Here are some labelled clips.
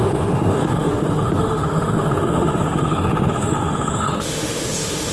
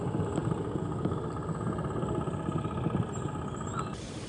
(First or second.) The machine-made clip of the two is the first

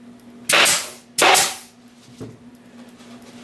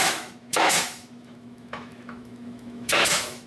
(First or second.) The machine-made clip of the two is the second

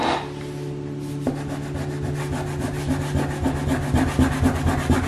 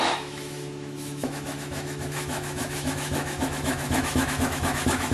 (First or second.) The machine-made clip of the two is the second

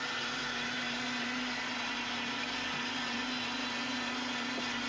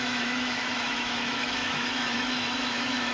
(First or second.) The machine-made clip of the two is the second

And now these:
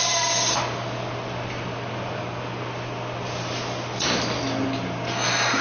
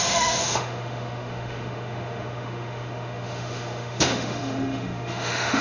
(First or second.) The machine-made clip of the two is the second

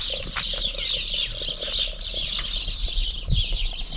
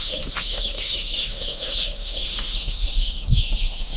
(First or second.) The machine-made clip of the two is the second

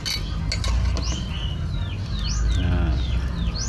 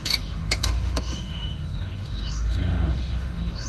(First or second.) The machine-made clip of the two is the second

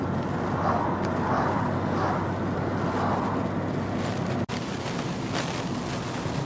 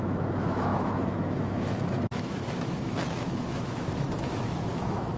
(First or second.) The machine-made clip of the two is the second